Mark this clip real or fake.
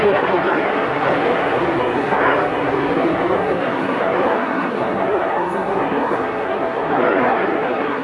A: fake